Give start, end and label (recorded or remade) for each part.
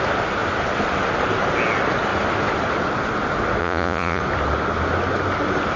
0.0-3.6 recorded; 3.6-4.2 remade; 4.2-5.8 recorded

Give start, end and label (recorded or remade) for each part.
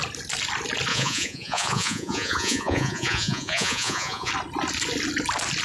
0.0-0.9 recorded; 0.9-4.3 remade; 4.3-5.6 recorded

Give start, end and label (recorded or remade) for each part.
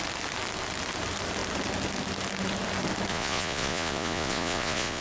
0.0-3.1 recorded; 3.1-5.0 remade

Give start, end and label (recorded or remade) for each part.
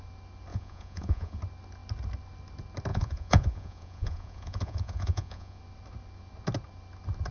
0.0-0.5 recorded; 0.5-1.4 remade; 1.4-2.9 recorded; 2.9-5.6 remade; 5.6-7.3 recorded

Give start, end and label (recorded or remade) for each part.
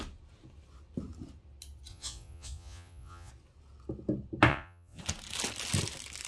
0.0-1.9 recorded; 1.9-3.3 remade; 3.3-4.5 recorded; 4.5-5.0 remade; 5.0-6.3 recorded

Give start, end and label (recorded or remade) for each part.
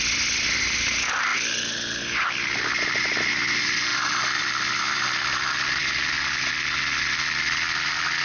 0.0-8.2 recorded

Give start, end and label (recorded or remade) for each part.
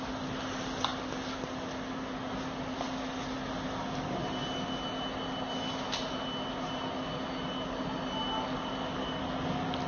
0.0-9.9 recorded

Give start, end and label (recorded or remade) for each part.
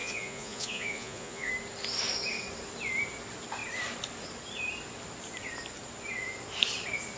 0.0-1.5 remade; 1.5-7.2 recorded